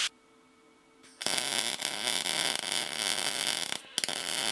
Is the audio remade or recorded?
recorded